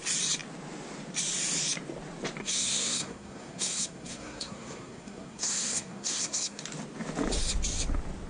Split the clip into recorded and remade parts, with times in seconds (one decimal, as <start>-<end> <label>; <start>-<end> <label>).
0.0-2.4 recorded; 2.4-6.6 remade; 6.6-8.3 recorded